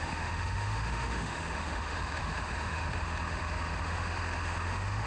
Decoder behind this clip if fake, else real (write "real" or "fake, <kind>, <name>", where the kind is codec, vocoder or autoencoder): fake, autoencoder, DAC-VAE